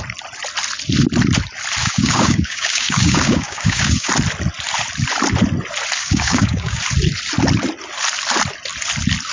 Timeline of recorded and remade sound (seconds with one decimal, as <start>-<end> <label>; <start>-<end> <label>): 0.0-1.8 recorded; 1.8-4.1 remade; 4.1-6.0 recorded; 6.0-6.8 remade; 6.8-9.3 recorded